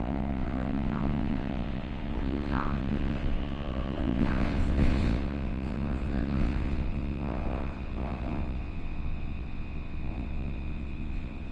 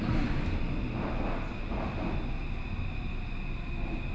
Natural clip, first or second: second